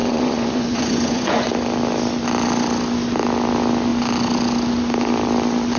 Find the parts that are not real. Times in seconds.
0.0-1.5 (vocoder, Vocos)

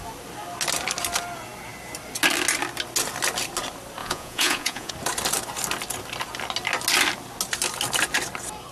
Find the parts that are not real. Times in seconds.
4.0-4.9 (vocoder, Vocos)

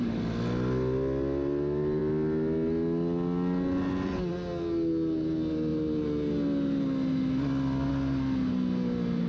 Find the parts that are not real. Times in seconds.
none

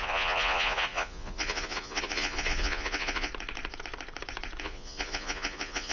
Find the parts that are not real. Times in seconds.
0.0-3.3 (vocoder, Vocos); 4.6-5.9